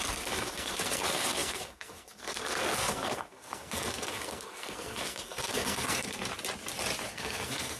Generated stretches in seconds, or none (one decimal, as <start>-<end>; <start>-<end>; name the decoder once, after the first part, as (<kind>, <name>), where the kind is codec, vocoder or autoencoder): 0.0-6.3 (codec, SNAC); 7.1-7.8